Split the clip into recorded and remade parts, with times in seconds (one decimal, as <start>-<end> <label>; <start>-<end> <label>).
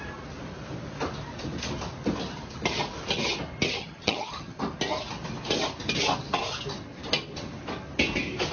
0.0-3.8 recorded; 3.8-4.6 remade; 4.6-8.5 recorded